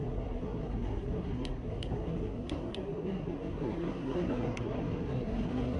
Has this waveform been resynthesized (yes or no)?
yes